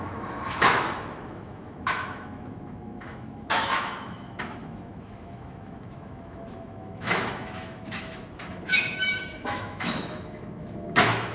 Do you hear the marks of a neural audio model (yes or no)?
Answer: yes